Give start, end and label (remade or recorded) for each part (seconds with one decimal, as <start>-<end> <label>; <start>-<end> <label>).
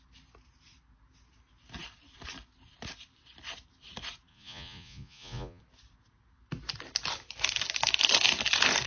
0.0-4.3 recorded; 4.3-5.6 remade; 5.6-8.9 recorded